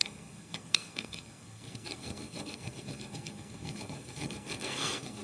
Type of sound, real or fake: fake